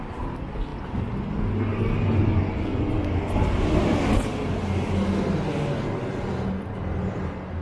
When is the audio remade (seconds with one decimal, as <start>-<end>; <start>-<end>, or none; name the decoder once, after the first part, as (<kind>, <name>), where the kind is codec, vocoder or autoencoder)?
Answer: none